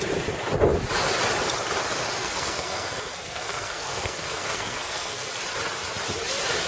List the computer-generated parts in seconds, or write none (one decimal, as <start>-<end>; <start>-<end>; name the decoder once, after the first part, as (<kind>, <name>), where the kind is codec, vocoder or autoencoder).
2.2-5.3 (codec, SNAC)